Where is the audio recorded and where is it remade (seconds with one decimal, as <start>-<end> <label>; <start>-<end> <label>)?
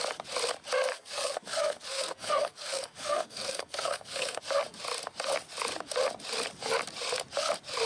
0.0-0.9 recorded; 0.9-4.4 remade; 4.4-7.9 recorded